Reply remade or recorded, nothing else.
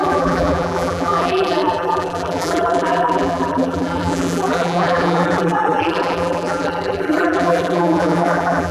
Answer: remade